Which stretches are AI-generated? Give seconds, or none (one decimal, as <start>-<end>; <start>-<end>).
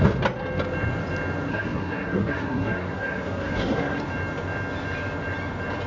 1.5-4.0